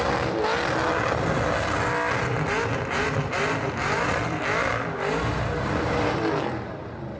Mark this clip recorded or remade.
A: recorded